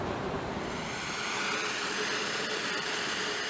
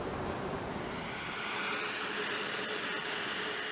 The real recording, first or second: second